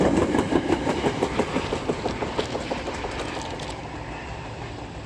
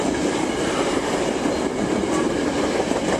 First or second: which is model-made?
first